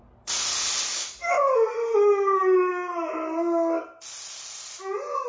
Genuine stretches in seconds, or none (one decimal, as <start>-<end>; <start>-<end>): 0.0-0.9; 1.5-5.3